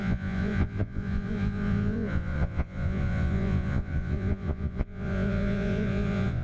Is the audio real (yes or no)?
no